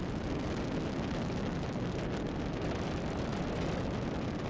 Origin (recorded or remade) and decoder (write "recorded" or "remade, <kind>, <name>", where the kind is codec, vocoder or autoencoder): recorded